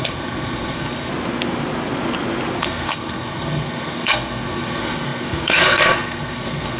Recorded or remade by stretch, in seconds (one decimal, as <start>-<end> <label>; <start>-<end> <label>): 0.0-1.1 remade; 1.1-2.6 recorded; 2.6-6.8 remade